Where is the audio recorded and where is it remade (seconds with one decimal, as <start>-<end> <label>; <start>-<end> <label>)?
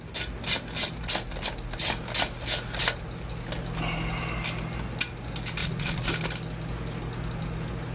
0.0-5.6 recorded; 5.6-6.1 remade; 6.1-7.9 recorded